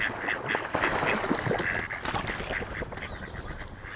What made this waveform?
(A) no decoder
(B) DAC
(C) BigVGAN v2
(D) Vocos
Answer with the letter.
A